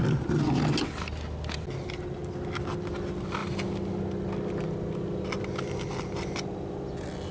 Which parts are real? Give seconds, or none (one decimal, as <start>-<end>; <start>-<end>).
0.0-7.3